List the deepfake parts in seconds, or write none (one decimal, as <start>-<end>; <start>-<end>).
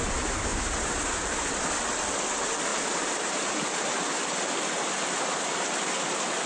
none